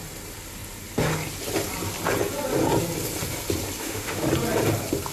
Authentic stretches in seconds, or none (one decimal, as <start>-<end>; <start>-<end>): 0.0-3.8; 4.3-5.1